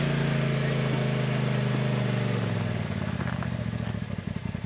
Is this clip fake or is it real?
real